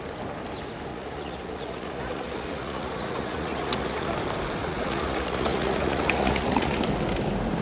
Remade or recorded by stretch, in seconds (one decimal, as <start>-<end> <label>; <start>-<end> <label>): 0.0-0.9 recorded; 0.9-4.1 remade; 4.1-4.6 recorded; 4.6-6.8 remade; 6.8-7.6 recorded